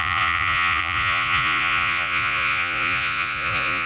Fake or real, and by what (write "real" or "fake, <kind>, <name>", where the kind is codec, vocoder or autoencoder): fake, vocoder, Vocos